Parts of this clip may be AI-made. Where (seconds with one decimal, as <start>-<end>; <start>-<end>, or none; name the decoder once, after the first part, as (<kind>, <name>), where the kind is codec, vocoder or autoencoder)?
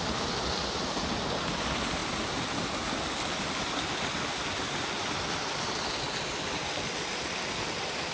none